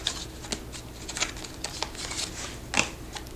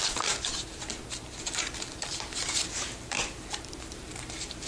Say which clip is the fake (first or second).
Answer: second